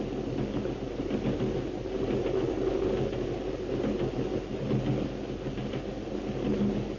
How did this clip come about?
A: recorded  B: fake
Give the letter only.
A